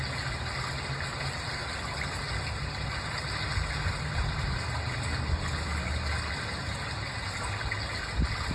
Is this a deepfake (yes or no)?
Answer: no